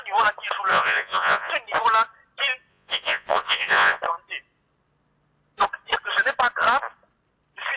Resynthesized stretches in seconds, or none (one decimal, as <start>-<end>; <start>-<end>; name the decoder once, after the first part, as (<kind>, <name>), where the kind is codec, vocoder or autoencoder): 0.7-1.5 (vocoder, Vocos); 2.7-4.0